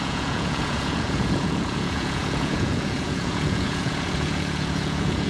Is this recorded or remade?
remade